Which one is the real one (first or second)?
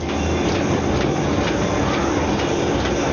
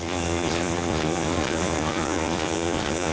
first